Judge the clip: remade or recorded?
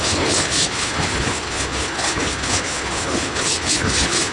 remade